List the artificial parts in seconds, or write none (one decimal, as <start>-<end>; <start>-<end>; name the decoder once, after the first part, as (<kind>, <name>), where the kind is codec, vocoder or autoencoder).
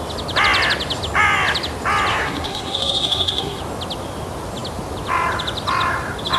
2.1-3.6 (codec, SNAC)